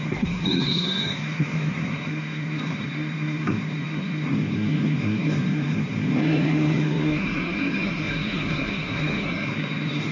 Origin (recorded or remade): remade